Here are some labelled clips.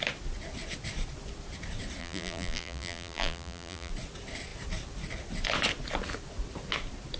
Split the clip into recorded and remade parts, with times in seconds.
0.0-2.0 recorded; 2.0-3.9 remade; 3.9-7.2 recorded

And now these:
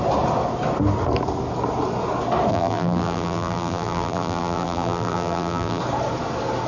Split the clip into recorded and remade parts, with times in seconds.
0.0-2.5 recorded; 2.5-5.8 remade; 5.8-6.7 recorded

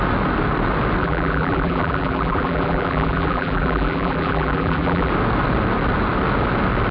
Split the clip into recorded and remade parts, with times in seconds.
0.0-1.0 recorded; 1.0-5.1 remade; 5.1-6.9 recorded

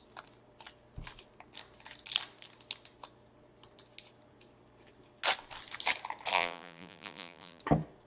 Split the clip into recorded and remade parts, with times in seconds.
0.0-6.3 recorded; 6.3-7.6 remade; 7.6-8.1 recorded

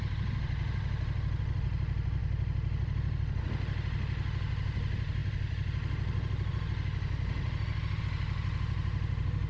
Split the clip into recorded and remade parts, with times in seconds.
0.0-8.9 recorded; 8.9-9.5 remade

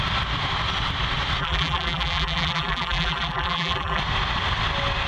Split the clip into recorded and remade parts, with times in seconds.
0.0-1.4 recorded; 1.4-4.0 remade; 4.0-5.1 recorded

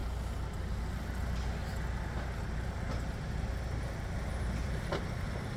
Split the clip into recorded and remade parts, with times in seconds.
0.0-4.3 recorded; 4.3-5.6 remade

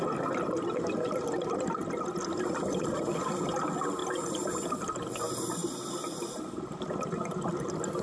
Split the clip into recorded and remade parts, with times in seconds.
0.0-4.0 recorded; 4.0-5.1 remade; 5.1-8.0 recorded